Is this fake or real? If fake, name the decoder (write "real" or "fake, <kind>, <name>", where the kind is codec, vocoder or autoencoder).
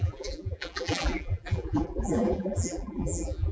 fake, vocoder, BigVGAN v2